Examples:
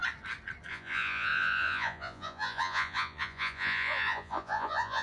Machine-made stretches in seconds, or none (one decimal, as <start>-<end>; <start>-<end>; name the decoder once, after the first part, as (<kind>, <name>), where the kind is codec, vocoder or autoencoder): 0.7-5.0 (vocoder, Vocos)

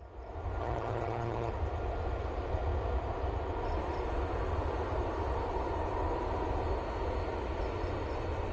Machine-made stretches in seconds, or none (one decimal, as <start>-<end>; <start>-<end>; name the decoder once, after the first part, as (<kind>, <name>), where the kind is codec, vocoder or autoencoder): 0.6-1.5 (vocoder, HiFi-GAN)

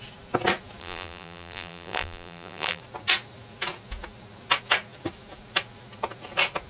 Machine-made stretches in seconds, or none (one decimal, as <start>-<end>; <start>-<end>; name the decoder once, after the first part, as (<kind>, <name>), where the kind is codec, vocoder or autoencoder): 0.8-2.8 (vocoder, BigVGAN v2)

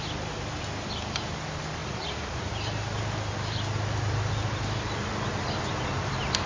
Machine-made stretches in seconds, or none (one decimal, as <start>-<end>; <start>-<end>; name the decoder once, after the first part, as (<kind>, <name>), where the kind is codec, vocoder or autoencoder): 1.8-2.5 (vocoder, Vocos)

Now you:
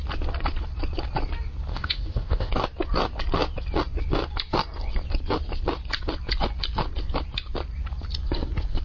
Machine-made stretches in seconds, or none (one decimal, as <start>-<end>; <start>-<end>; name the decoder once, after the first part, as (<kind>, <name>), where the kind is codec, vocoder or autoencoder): 1.7-2.5 (codec, ZipCodec)

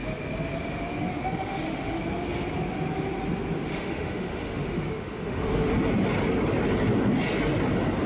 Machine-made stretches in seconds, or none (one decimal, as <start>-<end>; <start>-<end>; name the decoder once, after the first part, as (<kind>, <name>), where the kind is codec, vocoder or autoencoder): 1.1-2.0 (autoencoder, DAC-VAE); 3.7-5.7